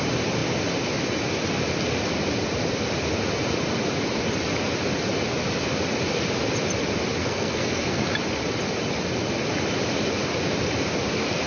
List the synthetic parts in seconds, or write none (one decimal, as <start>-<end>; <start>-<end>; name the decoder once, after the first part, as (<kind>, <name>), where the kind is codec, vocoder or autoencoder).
7.2-8.1 (codec, SNAC)